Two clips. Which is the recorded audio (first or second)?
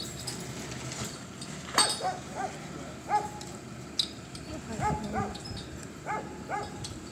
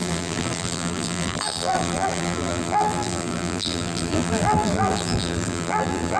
first